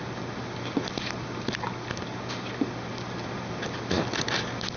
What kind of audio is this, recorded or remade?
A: recorded